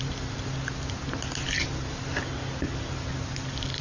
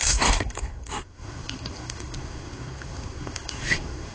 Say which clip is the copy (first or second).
second